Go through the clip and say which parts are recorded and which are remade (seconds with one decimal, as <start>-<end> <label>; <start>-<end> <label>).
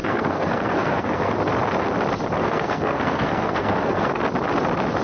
0.0-1.3 remade; 1.3-2.4 recorded; 2.4-4.2 remade; 4.2-5.0 recorded